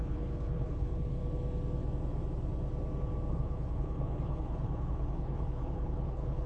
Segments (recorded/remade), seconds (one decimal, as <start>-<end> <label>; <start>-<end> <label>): 0.0-1.2 remade; 1.2-3.3 recorded; 3.3-6.5 remade